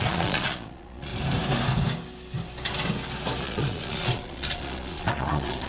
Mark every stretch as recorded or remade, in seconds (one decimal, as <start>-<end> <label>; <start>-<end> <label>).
0.0-1.1 remade; 1.1-3.4 recorded; 3.4-5.7 remade